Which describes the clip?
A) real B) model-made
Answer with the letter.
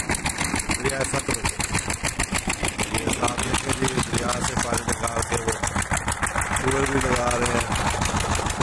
A